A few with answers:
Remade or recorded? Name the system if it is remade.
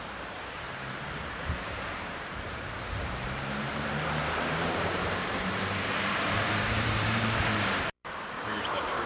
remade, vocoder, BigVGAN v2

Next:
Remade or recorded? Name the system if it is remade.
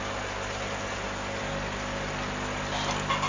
recorded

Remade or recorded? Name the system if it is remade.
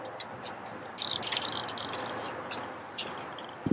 recorded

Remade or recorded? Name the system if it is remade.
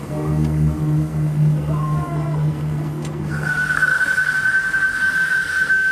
remade, codec, SNAC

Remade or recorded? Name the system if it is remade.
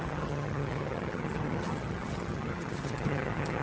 remade, vocoder, HiFi-GAN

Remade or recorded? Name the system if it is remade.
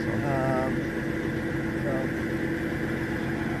recorded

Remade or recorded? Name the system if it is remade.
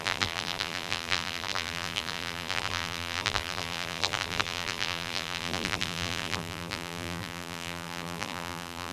remade, vocoder, BigVGAN v2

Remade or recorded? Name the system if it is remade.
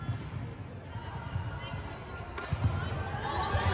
recorded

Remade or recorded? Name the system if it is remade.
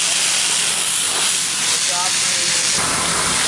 recorded